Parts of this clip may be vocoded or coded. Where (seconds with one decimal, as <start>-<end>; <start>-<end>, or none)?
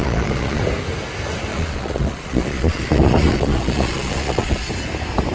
0.0-0.6; 1.5-4.7